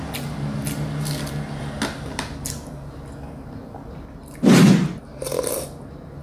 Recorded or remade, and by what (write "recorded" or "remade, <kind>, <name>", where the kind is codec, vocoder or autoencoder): recorded